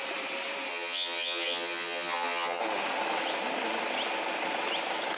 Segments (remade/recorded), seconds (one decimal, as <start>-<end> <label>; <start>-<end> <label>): 0.0-0.7 recorded; 0.7-2.6 remade; 2.6-5.2 recorded